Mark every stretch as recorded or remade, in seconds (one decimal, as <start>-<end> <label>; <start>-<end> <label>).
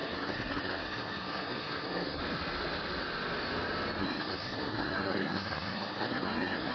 0.0-2.2 remade; 2.2-4.0 recorded; 4.0-6.7 remade